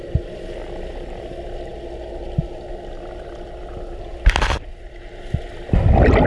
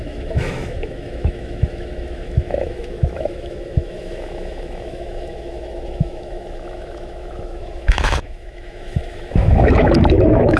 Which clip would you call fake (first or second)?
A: second